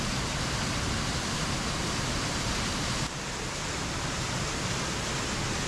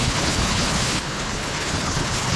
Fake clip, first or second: second